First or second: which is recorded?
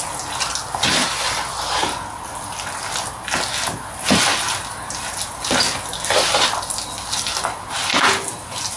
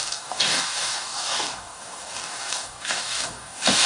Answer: first